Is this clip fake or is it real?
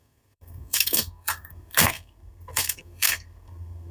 fake